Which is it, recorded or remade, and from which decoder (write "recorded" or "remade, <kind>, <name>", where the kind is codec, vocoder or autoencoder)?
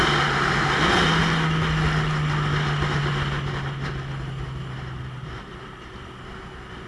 recorded